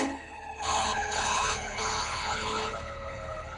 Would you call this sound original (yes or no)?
no